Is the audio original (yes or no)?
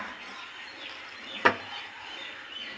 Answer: no